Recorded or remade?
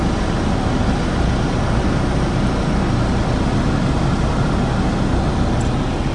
recorded